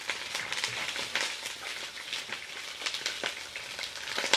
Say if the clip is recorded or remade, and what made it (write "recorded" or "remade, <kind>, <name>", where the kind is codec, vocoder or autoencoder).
recorded